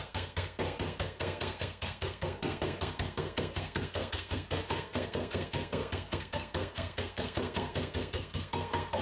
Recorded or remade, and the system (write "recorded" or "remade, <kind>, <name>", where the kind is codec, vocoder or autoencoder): remade, codec, SNAC